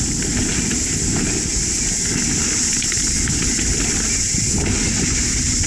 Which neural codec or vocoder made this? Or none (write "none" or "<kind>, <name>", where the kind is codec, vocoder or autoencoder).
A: none